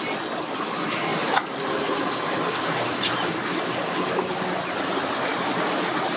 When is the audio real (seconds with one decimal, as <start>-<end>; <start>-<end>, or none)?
0.0-6.2